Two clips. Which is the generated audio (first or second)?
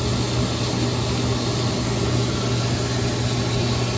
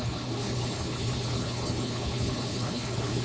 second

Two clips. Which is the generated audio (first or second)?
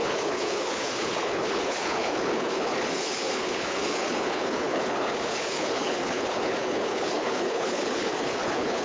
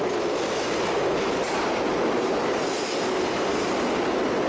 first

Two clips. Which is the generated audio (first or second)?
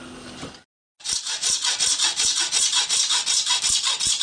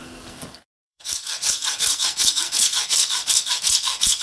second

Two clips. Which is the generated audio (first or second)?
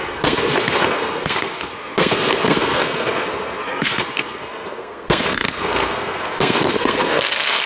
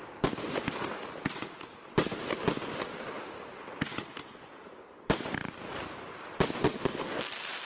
first